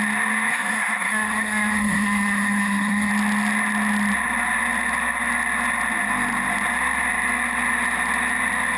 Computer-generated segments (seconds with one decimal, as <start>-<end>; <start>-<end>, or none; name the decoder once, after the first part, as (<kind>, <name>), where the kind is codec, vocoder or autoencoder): 0.5-3.1 (codec, SNAC)